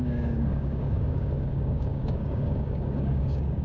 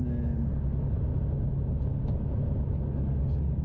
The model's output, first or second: first